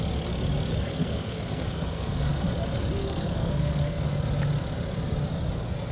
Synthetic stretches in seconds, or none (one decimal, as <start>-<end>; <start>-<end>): 0.7-2.4; 3.0-4.0

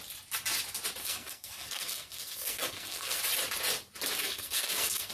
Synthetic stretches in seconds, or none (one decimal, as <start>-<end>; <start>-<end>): 1.0-3.2; 4.2-5.1

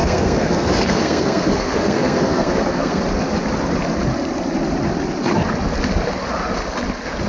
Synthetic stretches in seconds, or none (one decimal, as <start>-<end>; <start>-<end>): 0.0-3.0

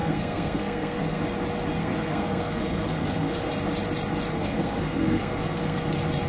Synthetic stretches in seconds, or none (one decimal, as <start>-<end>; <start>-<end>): 0.0-1.2; 1.8-3.5; 4.3-5.8